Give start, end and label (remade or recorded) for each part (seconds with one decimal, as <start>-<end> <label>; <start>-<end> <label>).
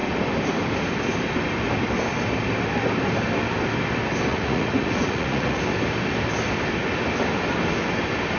0.0-4.3 recorded; 4.3-5.6 remade; 5.6-8.4 recorded